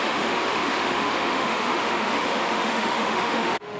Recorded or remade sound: remade